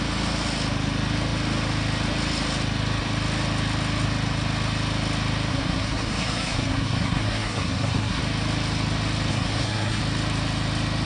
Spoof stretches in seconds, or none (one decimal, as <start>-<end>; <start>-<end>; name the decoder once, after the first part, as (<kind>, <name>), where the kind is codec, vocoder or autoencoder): 5.5-8.2 (codec, SNAC); 9.3-10.0